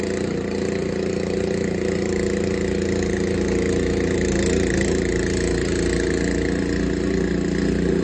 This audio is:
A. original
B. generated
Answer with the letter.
A